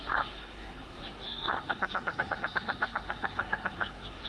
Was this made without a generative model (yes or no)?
no